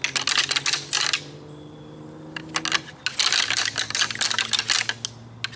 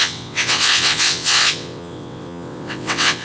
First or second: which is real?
first